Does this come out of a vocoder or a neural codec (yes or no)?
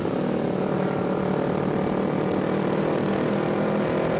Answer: no